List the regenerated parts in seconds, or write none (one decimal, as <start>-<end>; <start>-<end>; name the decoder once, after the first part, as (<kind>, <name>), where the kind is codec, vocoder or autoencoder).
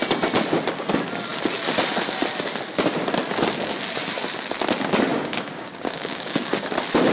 5.1-6.6 (codec, DAC)